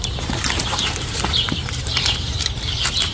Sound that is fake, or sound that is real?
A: fake